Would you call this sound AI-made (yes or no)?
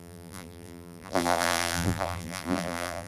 yes